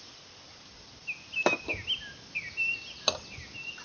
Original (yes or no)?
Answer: yes